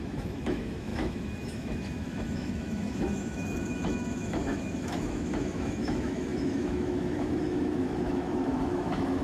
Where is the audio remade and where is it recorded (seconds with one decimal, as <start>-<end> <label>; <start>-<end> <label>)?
0.0-9.2 remade

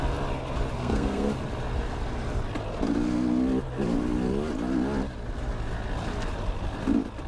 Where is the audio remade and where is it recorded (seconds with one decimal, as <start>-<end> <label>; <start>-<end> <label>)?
0.0-0.8 recorded; 0.8-1.3 remade; 1.3-7.3 recorded

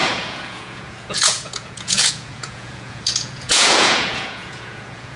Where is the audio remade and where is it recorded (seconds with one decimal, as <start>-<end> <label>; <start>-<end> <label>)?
0.0-5.2 remade

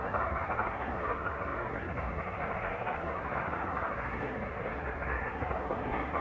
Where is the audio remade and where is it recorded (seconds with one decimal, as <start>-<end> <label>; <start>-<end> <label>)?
0.0-6.2 remade

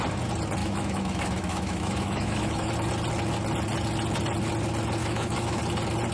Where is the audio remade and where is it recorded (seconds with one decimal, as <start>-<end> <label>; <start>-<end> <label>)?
0.0-0.6 recorded; 0.6-2.7 remade; 2.7-5.0 recorded; 5.0-5.6 remade; 5.6-6.1 recorded

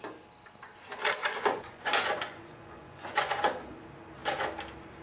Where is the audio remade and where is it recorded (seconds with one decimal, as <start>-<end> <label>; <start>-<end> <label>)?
0.0-1.2 recorded; 1.2-3.5 remade; 3.5-5.0 recorded

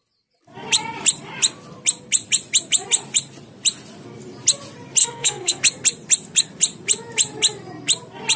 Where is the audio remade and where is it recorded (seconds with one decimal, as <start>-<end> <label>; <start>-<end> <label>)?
0.0-5.0 recorded; 5.0-5.6 remade; 5.6-8.4 recorded